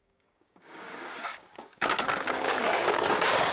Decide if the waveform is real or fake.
fake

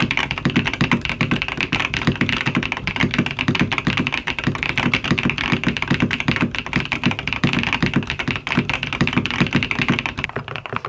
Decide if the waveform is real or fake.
real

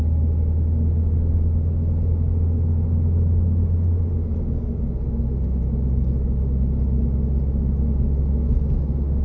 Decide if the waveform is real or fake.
real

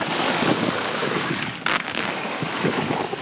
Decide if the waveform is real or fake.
fake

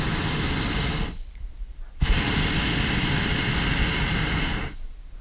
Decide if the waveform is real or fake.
real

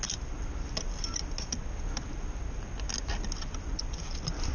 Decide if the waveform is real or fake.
real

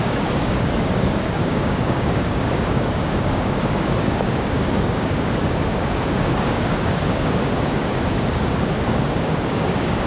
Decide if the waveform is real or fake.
fake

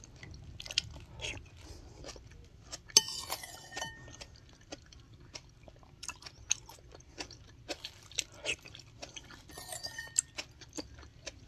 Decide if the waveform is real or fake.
real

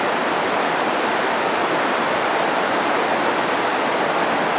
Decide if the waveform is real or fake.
real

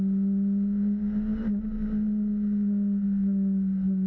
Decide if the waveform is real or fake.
real